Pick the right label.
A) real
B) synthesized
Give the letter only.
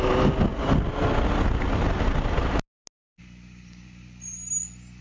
A